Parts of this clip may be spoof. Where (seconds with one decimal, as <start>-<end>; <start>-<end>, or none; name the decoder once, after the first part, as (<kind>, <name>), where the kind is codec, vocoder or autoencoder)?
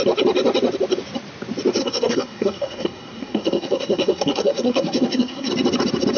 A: 1.8-5.5 (codec, SNAC)